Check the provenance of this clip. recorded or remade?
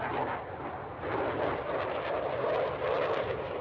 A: recorded